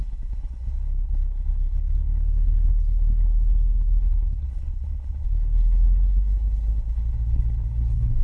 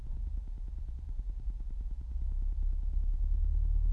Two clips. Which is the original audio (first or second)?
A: second